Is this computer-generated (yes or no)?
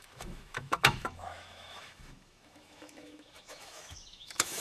yes